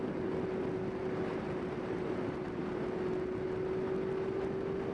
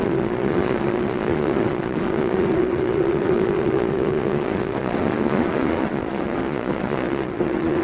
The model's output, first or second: second